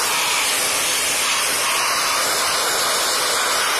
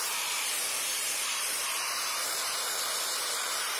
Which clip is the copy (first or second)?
second